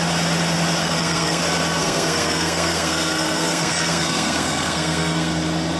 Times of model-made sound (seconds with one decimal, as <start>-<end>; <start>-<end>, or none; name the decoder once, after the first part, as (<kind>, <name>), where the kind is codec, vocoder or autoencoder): 0.8-1.4 (codec, SNAC); 1.8-5.3